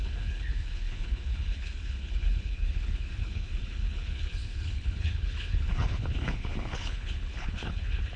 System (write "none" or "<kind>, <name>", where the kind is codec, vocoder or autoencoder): codec, HILCodec